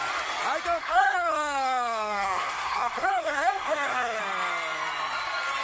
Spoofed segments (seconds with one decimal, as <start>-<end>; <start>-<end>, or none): 0.8-4.2